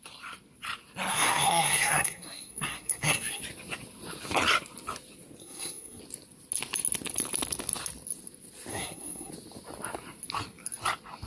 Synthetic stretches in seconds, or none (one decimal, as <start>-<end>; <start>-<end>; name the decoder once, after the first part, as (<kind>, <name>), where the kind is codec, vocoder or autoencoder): 1.1-3.4 (codec, SNAC); 5.4-6.0; 8.7-9.3